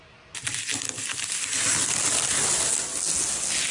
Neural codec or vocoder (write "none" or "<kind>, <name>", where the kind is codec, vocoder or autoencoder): none